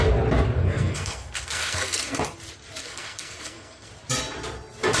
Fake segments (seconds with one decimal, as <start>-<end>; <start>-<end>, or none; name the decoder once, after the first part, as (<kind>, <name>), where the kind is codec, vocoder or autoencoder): 0.6-2.2 (codec, SNAC); 2.8-3.9